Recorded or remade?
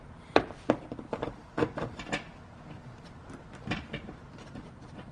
recorded